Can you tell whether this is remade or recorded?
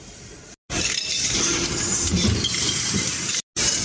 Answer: recorded